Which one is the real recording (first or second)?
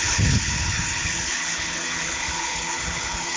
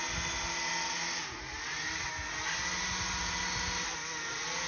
second